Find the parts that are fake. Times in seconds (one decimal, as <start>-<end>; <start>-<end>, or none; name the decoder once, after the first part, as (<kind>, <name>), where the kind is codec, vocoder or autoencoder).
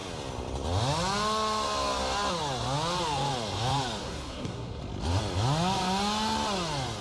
4.0-4.8 (codec, SNAC)